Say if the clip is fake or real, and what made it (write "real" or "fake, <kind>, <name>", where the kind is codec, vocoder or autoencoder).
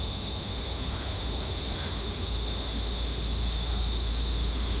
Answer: fake, autoencoder, DAC-VAE